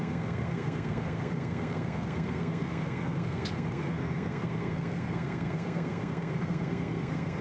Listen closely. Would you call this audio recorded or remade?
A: remade